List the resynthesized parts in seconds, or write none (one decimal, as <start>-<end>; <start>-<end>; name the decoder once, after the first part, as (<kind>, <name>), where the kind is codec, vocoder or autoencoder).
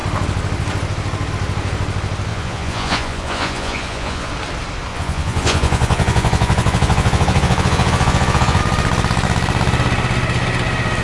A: 2.3-4.3 (vocoder, Vocos); 4.9-8.6